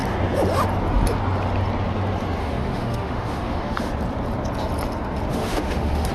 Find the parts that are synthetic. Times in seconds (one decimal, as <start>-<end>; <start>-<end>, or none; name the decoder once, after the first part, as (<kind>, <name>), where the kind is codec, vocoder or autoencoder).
2.4-3.9 (autoencoder, DAC-VAE); 5.3-6.1